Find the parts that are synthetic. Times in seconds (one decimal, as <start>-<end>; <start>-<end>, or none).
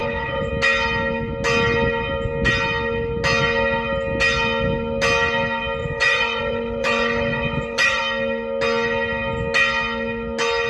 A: 0.0-0.5; 5.8-8.0